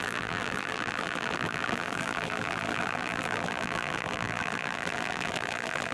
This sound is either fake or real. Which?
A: fake